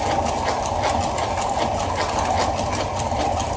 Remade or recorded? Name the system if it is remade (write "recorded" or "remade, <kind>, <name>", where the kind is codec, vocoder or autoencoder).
recorded